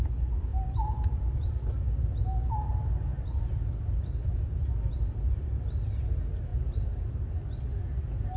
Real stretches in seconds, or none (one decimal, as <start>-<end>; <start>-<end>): 0.0-0.5; 1.5-8.4